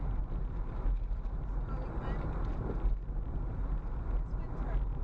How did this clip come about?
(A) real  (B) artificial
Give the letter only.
A